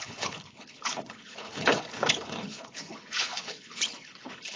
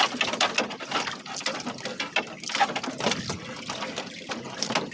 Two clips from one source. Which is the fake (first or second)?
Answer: first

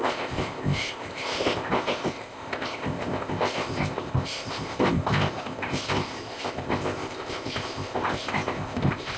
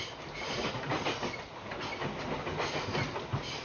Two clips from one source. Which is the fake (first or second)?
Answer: first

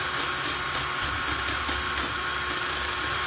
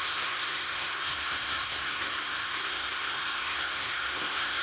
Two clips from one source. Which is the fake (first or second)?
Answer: second